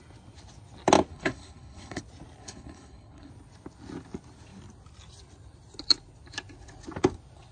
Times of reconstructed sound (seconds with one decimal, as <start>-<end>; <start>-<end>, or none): 1.1-2.0; 2.4-3.3